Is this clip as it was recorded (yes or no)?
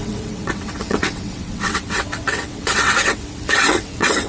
no